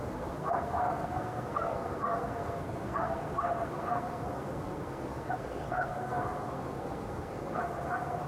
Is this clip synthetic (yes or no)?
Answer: yes